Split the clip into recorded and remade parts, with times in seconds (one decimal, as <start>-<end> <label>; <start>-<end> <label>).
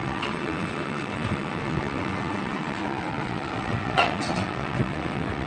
0.0-5.5 remade